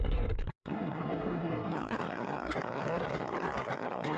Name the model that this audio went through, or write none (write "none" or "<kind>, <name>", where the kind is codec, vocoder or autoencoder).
codec, SNAC